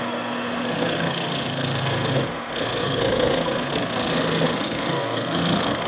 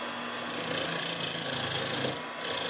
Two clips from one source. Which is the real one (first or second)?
second